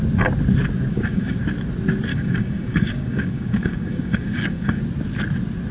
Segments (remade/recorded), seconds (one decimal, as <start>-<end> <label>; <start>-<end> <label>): 0.0-0.9 recorded; 0.9-1.4 remade; 1.4-2.1 recorded; 2.1-4.8 remade; 4.8-5.7 recorded